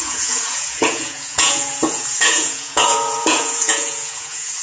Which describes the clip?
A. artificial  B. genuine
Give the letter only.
A